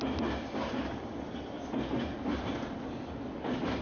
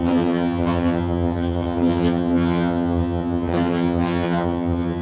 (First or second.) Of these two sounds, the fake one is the second